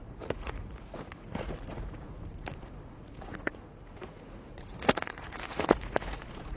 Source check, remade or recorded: remade